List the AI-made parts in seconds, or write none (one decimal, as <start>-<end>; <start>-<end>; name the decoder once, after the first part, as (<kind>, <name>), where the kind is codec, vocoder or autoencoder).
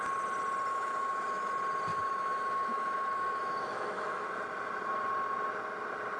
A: 0.7-1.5 (autoencoder, DAC-VAE); 1.9-4.3